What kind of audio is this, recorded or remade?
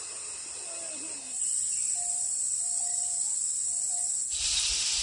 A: recorded